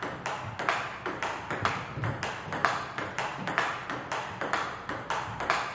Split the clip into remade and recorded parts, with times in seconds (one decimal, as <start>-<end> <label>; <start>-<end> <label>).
0.0-2.6 recorded; 2.6-4.9 remade; 4.9-5.7 recorded

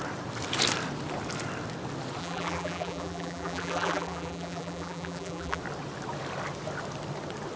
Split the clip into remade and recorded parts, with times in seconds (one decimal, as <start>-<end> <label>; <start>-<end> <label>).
0.0-2.2 recorded; 2.2-5.6 remade; 5.6-7.6 recorded

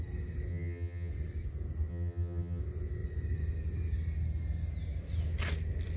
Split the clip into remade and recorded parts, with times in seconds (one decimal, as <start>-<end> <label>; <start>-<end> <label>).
0.0-0.5 recorded; 0.5-1.1 remade; 1.1-1.9 recorded; 1.9-2.6 remade; 2.6-6.0 recorded

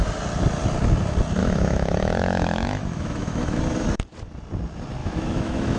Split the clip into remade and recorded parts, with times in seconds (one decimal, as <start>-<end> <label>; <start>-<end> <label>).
0.0-1.4 recorded; 1.4-3.6 remade; 3.6-5.0 recorded; 5.0-5.8 remade

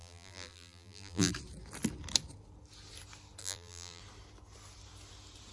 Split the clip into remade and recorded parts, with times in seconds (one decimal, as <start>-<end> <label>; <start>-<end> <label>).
0.0-1.3 remade; 1.3-3.4 recorded; 3.4-4.0 remade; 4.0-5.5 recorded

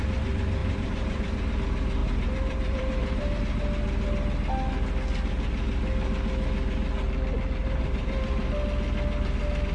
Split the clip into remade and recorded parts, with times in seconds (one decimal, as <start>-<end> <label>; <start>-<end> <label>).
0.0-0.6 recorded; 0.6-1.5 remade; 1.5-2.0 recorded; 2.0-3.4 remade; 3.4-7.6 recorded; 7.6-8.4 remade; 8.4-9.7 recorded